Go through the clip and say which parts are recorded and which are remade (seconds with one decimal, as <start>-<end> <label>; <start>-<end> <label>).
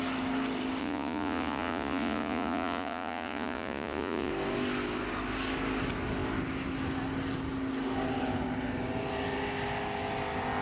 0.0-0.8 recorded; 0.8-4.3 remade; 4.3-10.6 recorded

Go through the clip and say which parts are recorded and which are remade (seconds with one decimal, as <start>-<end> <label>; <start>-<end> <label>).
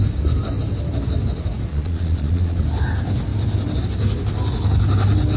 0.0-1.7 recorded; 1.7-2.6 remade; 2.6-5.4 recorded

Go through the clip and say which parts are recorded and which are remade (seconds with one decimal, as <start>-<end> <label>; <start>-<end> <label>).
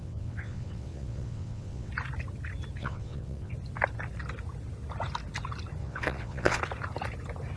0.0-1.9 remade; 1.9-2.8 recorded; 2.8-3.5 remade; 3.5-5.8 recorded; 5.8-6.6 remade; 6.6-7.6 recorded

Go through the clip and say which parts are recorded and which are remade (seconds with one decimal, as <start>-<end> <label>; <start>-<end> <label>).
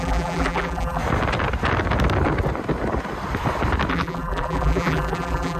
0.0-1.0 remade; 1.0-3.9 recorded; 3.9-5.6 remade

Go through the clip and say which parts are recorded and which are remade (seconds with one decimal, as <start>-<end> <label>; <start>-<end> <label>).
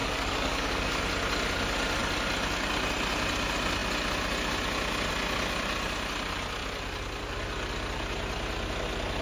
0.0-1.0 remade; 1.0-9.2 recorded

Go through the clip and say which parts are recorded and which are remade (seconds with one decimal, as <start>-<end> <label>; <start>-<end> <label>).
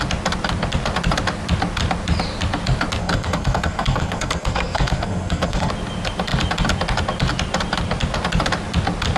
0.0-3.0 recorded; 3.0-5.7 remade; 5.7-9.2 recorded